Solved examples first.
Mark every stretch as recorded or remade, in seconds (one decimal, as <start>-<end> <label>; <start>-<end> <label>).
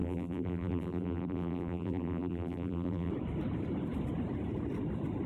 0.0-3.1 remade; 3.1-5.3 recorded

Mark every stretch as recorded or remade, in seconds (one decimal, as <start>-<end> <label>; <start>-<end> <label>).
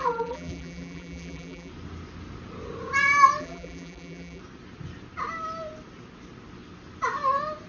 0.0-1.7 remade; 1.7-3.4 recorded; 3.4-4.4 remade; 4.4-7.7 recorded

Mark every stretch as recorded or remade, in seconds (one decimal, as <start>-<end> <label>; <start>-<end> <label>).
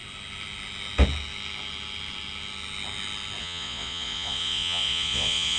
0.0-3.4 recorded; 3.4-5.6 remade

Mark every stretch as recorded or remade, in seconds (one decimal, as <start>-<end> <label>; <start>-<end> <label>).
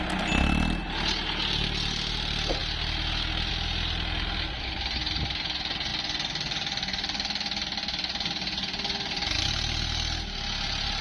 0.0-11.0 recorded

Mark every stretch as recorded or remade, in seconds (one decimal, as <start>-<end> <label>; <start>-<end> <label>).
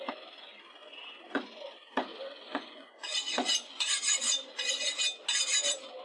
0.0-0.8 recorded; 0.8-1.6 remade; 1.6-2.1 recorded; 2.1-5.0 remade; 5.0-6.0 recorded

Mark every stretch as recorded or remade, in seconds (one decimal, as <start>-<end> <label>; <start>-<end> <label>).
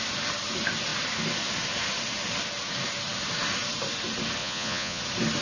0.0-4.4 recorded; 4.4-5.0 remade; 5.0-5.4 recorded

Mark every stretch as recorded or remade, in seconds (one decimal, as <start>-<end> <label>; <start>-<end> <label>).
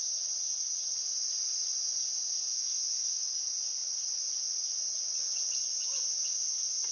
0.0-2.5 recorded; 2.5-3.4 remade; 3.4-6.9 recorded